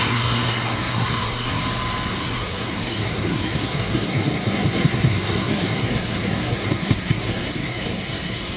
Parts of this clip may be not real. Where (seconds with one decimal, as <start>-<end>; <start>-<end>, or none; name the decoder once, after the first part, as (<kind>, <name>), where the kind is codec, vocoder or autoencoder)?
0.0-1.6 (codec, SNAC); 2.2-8.6